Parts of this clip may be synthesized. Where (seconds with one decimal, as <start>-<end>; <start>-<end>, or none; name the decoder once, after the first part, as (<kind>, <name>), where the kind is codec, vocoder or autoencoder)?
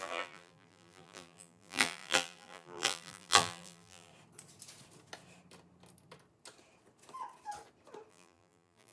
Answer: 0.0-4.1 (vocoder, BigVGAN v2); 8.1-8.9